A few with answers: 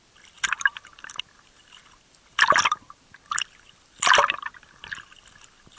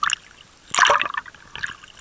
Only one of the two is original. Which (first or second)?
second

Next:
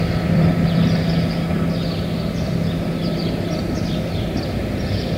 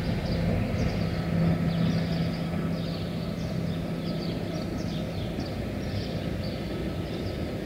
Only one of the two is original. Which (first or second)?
second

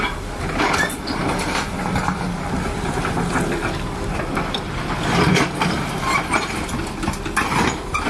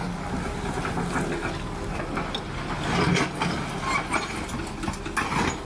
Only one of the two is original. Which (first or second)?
second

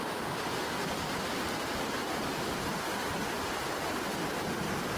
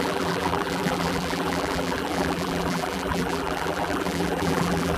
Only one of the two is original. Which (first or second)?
first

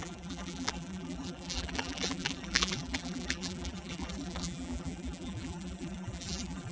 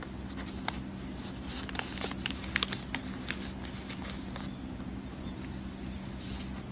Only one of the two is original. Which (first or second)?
second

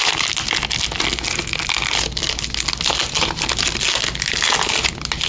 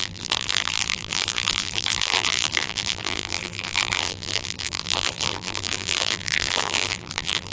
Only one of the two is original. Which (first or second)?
first